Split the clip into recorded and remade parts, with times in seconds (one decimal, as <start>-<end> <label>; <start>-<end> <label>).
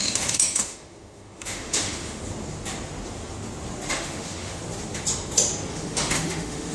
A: 0.0-2.2 remade; 2.2-3.9 recorded; 3.9-4.6 remade; 4.6-5.7 recorded; 5.7-6.7 remade